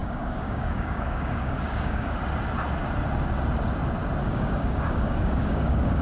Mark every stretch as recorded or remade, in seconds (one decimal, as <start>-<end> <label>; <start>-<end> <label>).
0.0-2.2 remade; 2.2-4.2 recorded; 4.2-6.0 remade